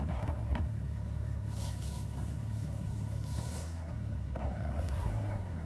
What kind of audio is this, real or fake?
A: fake